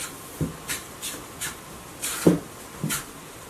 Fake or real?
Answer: fake